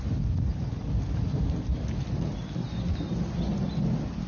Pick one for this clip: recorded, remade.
recorded